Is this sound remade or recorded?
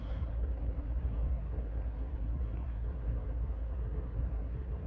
remade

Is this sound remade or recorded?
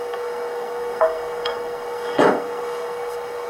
remade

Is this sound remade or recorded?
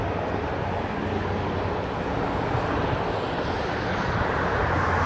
recorded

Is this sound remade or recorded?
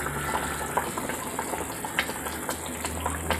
recorded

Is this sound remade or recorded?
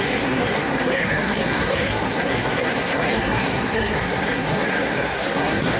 remade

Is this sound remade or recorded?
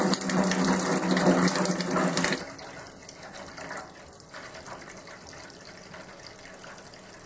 recorded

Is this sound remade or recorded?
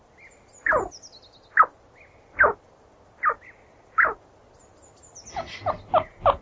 recorded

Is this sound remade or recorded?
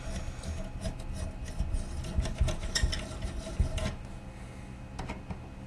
recorded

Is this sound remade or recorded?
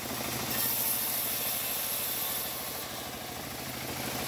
recorded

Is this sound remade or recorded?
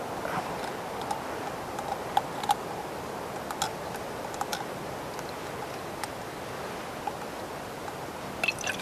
recorded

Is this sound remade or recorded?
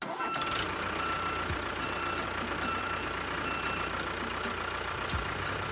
recorded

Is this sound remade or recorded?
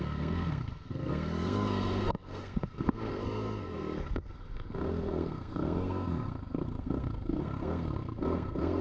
remade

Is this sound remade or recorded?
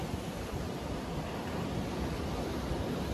recorded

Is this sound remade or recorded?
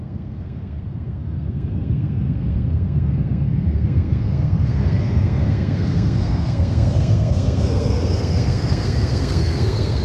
remade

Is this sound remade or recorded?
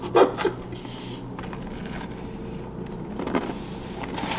recorded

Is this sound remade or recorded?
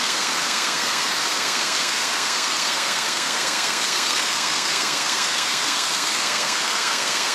remade